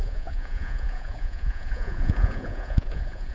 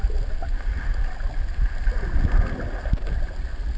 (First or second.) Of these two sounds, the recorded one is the second